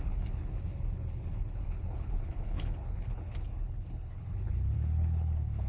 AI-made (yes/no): yes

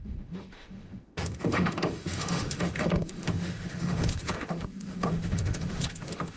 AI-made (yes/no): yes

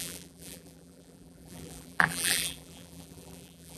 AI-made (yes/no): yes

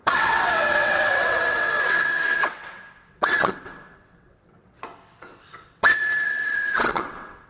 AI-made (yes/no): yes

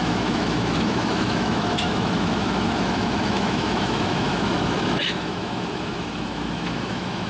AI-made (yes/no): yes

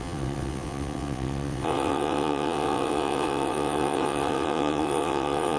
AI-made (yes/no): yes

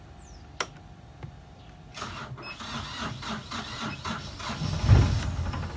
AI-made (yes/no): no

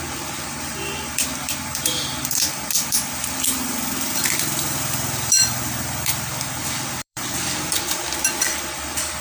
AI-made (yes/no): yes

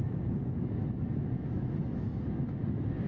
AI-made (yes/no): yes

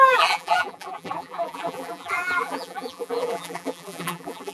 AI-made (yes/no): yes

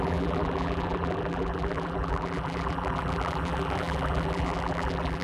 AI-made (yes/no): yes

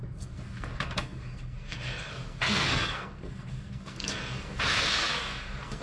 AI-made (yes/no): yes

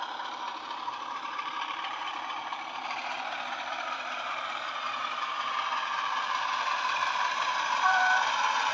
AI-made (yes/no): yes